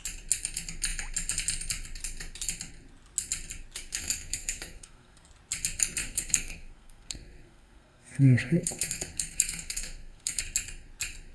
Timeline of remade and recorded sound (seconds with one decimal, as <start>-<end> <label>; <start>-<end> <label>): 0.0-3.9 recorded; 3.9-5.3 remade; 5.3-6.0 recorded; 6.0-10.4 remade; 10.4-11.3 recorded